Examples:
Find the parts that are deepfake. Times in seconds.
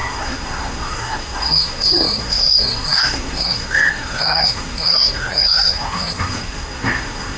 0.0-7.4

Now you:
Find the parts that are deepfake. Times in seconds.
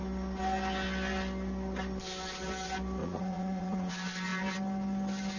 3.0-3.9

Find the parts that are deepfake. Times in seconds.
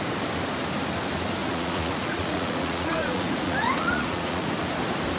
1.4-4.5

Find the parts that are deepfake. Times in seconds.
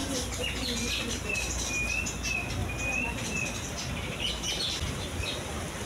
none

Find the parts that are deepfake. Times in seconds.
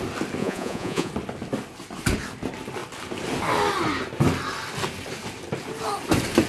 0.4-1.1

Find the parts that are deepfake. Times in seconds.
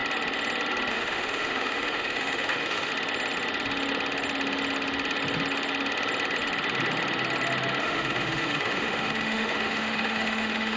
0.9-2.9; 7.8-10.8